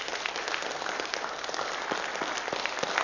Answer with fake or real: real